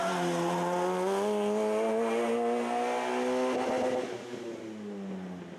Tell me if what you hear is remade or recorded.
recorded